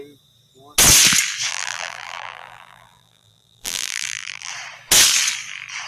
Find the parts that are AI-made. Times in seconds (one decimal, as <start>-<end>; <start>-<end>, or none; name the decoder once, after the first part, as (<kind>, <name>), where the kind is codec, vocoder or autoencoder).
1.5-4.5 (vocoder, BigVGAN v2)